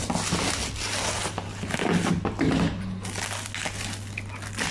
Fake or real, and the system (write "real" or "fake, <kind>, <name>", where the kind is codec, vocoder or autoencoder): real